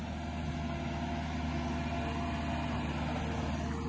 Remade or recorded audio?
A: recorded